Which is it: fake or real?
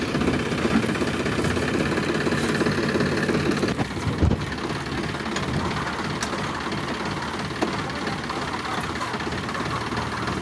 real